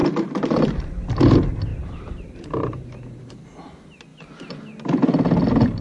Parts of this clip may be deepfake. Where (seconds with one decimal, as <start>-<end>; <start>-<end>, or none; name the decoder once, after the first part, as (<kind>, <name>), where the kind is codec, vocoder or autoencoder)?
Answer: 0.0-0.8 (vocoder, BigVGAN v2); 1.7-3.3